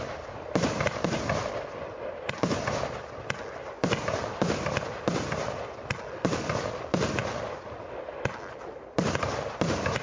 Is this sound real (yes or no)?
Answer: yes